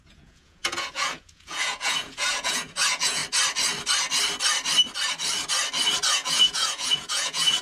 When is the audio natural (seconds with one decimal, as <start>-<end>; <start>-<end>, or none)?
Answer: 3.2-6.1